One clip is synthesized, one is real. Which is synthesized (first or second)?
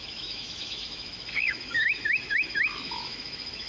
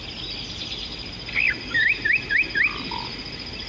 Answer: first